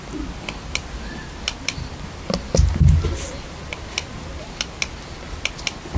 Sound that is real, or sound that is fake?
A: real